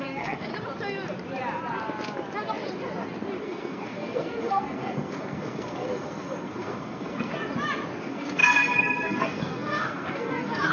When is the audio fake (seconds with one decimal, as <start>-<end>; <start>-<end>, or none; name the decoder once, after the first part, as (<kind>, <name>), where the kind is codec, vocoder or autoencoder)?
0.0-0.5 (codec, SNAC); 3.4-7.3; 8.0-10.7